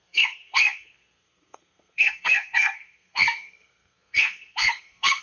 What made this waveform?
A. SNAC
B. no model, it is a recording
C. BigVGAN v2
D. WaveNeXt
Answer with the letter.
A